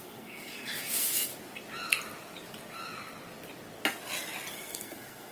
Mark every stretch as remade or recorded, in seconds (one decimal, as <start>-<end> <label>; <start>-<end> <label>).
0.0-1.3 remade; 1.3-4.5 recorded; 4.5-5.3 remade